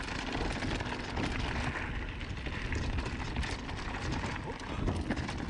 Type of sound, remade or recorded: recorded